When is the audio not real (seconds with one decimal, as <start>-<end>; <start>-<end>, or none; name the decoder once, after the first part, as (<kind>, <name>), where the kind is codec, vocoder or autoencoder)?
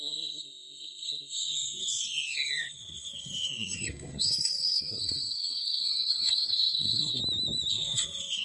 0.0-7.2 (codec, SNAC); 7.7-8.4